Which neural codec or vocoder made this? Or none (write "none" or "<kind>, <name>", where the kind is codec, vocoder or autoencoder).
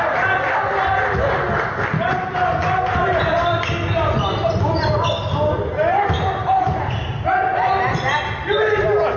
none